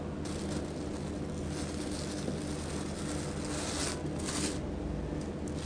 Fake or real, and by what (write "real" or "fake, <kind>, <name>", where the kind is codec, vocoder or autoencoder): real